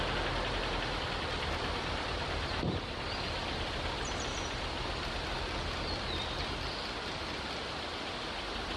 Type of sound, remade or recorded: recorded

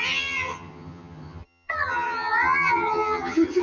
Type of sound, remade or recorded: remade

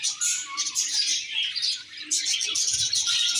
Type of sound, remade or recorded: recorded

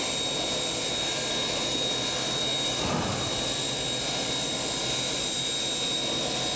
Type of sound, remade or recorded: recorded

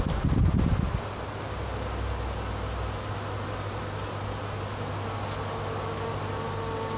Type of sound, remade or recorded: recorded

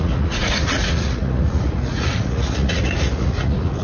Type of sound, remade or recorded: remade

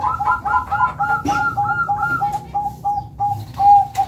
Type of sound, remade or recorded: recorded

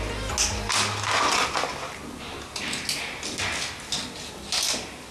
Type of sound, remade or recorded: recorded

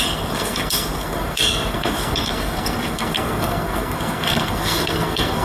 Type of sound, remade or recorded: remade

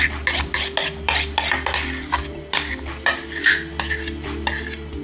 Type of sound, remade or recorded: recorded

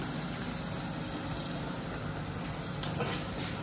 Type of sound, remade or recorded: recorded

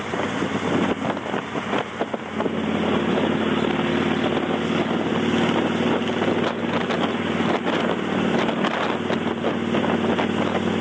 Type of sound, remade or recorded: recorded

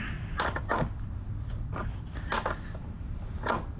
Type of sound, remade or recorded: recorded